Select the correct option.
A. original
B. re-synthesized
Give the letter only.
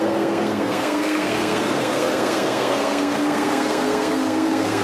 B